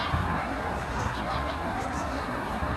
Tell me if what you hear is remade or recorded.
remade